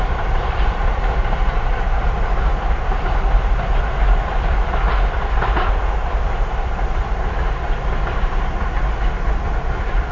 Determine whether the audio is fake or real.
fake